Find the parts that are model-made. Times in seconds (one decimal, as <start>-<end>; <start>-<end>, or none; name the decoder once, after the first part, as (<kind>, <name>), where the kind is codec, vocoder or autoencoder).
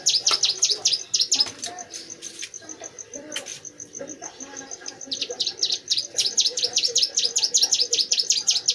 3.5-7.0 (vocoder, BigVGAN v2)